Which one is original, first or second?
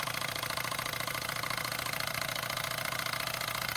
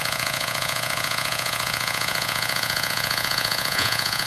first